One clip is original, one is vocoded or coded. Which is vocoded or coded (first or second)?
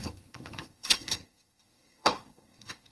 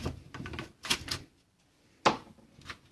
first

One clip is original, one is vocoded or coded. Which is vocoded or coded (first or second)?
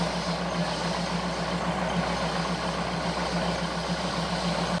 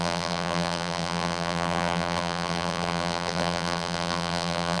second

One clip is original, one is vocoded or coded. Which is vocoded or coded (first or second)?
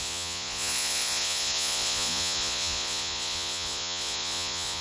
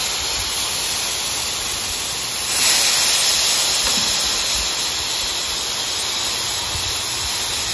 first